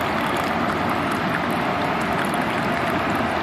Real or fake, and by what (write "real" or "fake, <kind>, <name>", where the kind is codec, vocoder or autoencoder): real